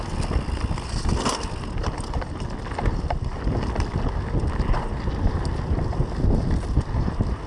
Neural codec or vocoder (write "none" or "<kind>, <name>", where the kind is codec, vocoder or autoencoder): none